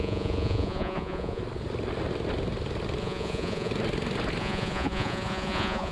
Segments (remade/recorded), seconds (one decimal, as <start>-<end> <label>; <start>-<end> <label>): 0.0-1.4 remade; 1.4-3.0 recorded; 3.0-3.7 remade; 3.7-4.4 recorded; 4.4-5.9 remade